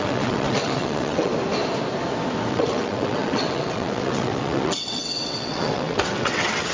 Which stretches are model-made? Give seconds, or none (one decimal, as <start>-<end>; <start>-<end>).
0.0-1.3; 2.5-6.7